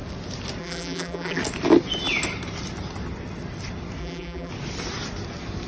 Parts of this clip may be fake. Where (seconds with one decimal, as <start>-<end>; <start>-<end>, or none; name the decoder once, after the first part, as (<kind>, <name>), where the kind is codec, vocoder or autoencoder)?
0.6-1.4 (vocoder, BigVGAN v2); 4.0-4.5